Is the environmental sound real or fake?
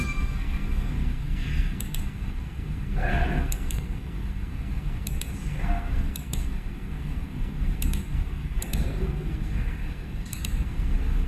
fake